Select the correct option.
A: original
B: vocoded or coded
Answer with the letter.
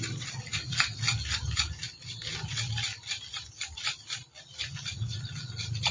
B